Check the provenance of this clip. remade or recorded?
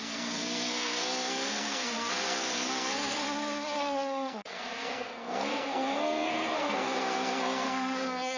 remade